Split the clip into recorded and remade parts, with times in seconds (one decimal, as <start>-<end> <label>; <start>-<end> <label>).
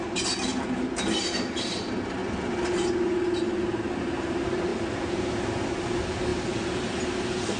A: 0.0-7.6 recorded